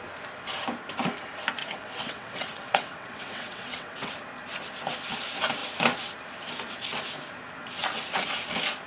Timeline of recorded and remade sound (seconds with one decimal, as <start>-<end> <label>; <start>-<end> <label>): 0.0-1.6 recorded; 1.6-4.1 remade; 4.1-8.9 recorded